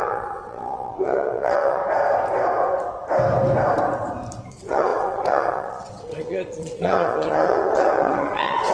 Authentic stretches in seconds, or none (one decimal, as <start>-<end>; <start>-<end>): 1.8-4.5